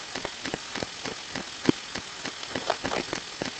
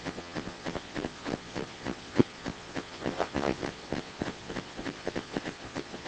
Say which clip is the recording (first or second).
first